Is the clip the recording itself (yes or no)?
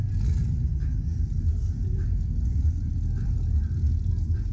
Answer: yes